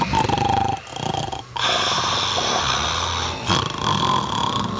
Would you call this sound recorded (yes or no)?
yes